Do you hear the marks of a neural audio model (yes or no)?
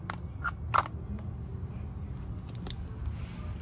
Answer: no